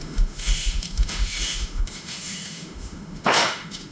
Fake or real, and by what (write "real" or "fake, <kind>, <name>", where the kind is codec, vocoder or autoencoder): fake, autoencoder, DAC-VAE